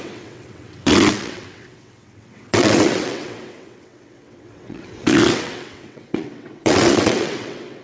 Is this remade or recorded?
remade